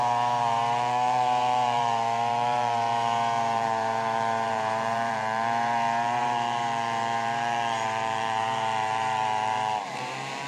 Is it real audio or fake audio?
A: fake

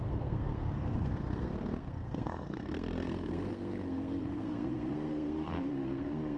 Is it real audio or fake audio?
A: fake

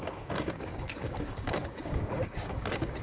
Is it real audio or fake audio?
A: fake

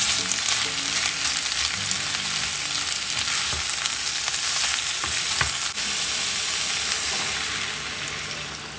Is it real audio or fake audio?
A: real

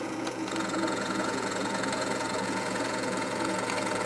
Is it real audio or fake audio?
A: fake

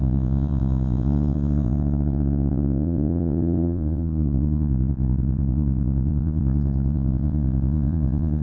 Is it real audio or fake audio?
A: fake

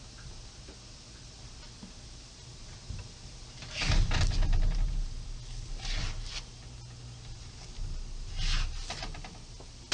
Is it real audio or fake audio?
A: real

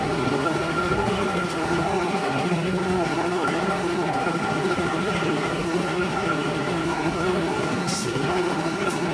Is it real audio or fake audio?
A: fake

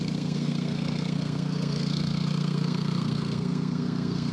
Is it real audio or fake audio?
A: fake